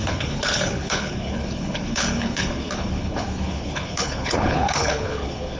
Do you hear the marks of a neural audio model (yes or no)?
yes